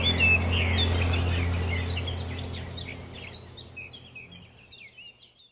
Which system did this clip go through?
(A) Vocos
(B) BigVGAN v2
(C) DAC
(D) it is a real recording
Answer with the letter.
D